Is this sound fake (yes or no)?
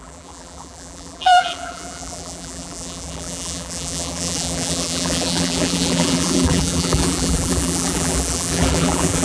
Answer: yes